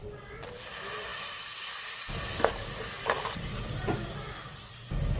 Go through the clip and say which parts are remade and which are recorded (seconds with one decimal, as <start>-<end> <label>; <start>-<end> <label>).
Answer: 0.0-5.2 recorded

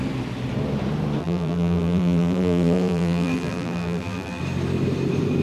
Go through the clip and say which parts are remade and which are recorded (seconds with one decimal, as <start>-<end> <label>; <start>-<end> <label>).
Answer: 0.0-1.2 recorded; 1.2-4.4 remade; 4.4-5.4 recorded

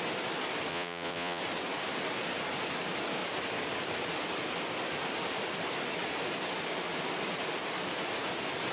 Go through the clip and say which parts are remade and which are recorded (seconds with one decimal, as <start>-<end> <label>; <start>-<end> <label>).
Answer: 0.0-0.7 recorded; 0.7-1.4 remade; 1.4-8.7 recorded